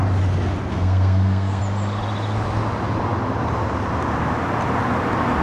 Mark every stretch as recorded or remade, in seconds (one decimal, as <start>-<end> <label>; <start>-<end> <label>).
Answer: 0.0-0.7 recorded; 0.7-1.6 remade; 1.6-5.4 recorded